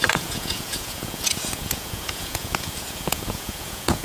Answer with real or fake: fake